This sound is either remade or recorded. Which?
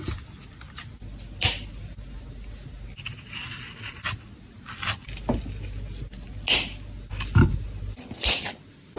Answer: recorded